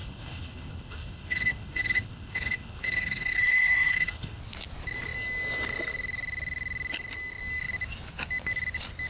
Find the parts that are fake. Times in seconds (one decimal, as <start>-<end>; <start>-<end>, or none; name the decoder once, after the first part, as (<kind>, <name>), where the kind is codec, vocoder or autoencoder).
0.0-4.4 (codec, HILCodec)